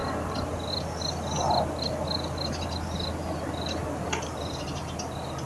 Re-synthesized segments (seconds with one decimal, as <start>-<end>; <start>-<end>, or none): none

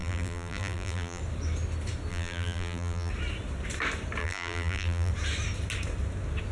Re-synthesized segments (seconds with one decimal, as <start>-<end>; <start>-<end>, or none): 0.0-1.2; 2.1-3.1; 4.2-5.1